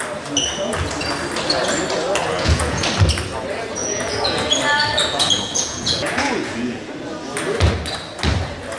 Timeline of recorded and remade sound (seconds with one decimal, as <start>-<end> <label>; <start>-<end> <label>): 0.0-2.2 recorded; 2.2-2.8 remade; 2.8-3.8 recorded; 3.8-4.5 remade; 4.5-5.0 recorded; 5.0-6.9 remade; 6.9-8.8 recorded